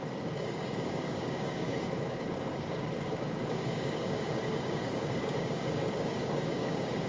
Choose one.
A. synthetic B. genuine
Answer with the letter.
A